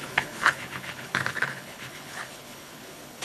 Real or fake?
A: fake